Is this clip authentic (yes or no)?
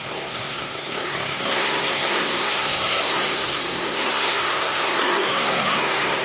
no